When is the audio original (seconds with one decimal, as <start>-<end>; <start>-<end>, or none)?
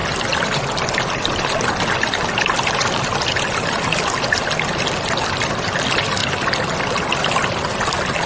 0.0-8.3